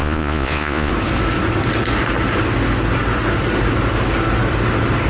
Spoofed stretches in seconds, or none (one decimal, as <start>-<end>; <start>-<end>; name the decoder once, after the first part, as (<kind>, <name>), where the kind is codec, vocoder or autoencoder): 0.0-0.9 (vocoder, Vocos)